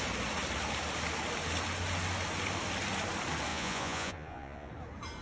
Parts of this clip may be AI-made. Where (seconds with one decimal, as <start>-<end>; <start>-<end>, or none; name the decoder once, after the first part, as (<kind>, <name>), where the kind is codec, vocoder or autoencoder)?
3.5-4.7 (vocoder, Vocos)